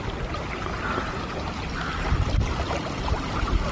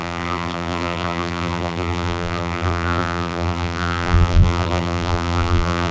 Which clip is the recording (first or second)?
first